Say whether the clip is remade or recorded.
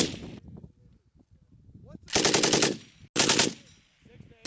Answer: recorded